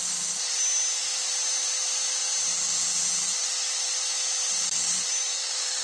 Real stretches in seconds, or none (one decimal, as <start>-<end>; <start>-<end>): 0.0-5.8